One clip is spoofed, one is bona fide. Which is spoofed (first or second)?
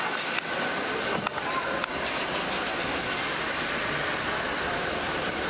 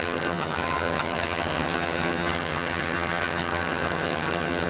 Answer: second